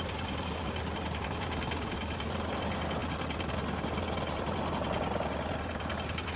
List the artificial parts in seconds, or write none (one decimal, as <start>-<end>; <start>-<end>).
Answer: 0.0-3.0